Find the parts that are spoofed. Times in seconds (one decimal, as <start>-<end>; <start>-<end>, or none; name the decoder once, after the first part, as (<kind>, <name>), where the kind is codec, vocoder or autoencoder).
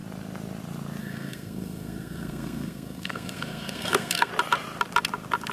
1.0-4.3 (codec, SNAC)